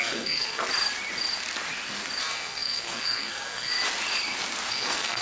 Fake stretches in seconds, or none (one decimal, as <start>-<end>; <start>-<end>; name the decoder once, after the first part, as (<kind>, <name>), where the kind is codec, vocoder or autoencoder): 0.0-0.6 (codec, SNAC); 2.2-3.7; 4.7-5.2